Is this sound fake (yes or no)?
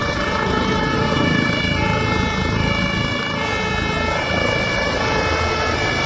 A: no